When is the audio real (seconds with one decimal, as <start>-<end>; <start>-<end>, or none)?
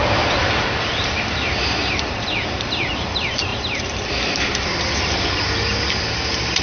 0.0-6.6